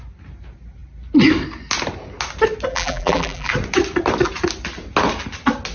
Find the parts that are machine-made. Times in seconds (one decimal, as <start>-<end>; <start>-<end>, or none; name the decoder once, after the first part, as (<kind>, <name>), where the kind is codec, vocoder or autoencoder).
2.7-3.5 (vocoder, BigVGAN v2)